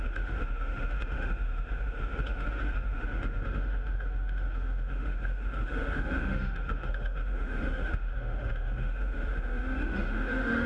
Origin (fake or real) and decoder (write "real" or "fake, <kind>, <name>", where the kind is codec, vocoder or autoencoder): fake, autoencoder, DAC-VAE